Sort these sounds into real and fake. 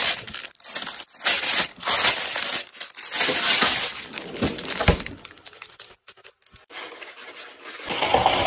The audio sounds real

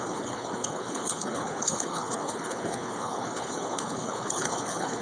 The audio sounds fake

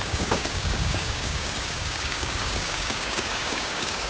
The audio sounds fake